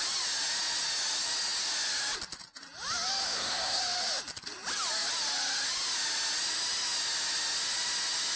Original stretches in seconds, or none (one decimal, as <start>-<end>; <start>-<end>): 0.0-3.2; 3.8-8.4